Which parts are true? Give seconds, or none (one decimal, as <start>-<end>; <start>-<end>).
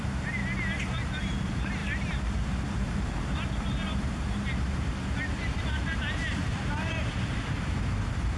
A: 0.4-1.0